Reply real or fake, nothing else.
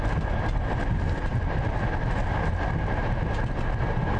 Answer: real